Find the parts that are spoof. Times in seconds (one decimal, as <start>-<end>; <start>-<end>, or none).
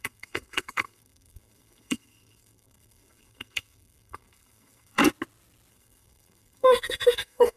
0.0-5.0; 5.7-7.6